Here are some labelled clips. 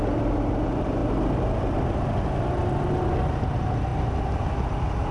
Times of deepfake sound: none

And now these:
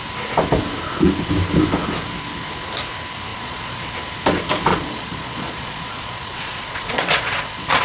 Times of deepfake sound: 3.3-3.9 (vocoder, Vocos); 4.7-7.8